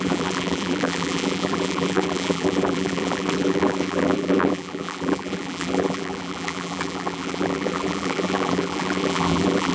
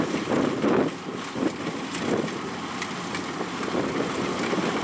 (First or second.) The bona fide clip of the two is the second